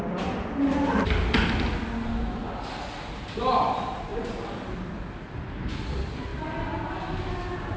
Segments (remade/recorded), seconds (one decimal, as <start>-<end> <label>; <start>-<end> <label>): 0.0-7.8 recorded